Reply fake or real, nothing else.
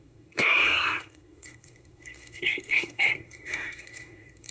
fake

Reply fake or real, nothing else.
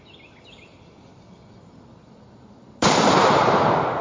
real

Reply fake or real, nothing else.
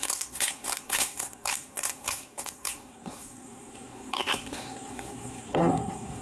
fake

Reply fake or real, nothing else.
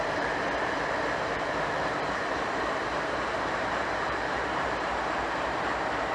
fake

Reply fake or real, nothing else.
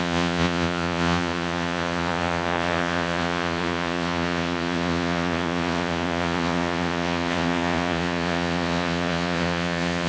fake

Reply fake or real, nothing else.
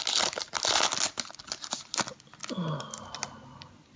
real